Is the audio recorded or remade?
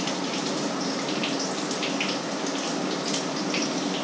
recorded